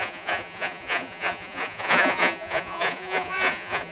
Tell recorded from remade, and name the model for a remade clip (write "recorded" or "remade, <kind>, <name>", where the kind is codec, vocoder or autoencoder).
remade, vocoder, Vocos